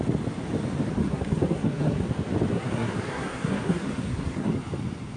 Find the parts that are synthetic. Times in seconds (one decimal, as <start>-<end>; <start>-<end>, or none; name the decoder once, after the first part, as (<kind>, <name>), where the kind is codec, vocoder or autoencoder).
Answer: 1.0-2.1 (codec, SNAC); 2.5-4.5